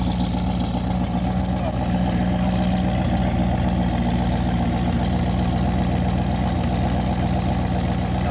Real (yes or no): yes